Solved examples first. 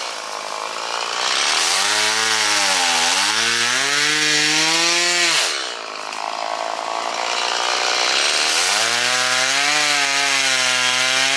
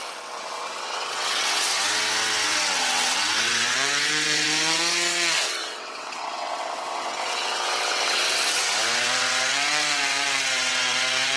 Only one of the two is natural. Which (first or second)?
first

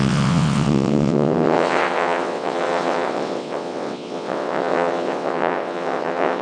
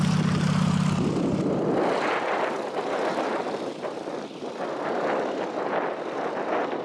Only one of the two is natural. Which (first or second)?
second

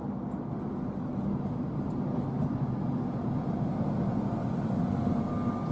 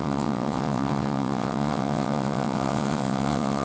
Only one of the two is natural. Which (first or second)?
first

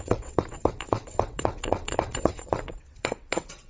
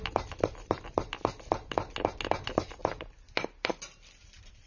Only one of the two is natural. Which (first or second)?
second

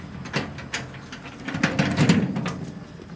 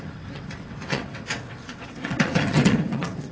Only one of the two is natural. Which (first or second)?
first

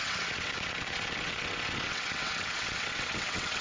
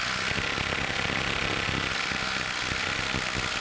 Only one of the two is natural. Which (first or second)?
second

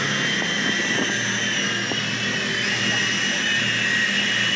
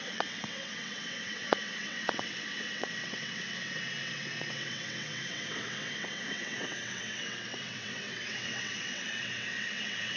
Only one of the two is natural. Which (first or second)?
first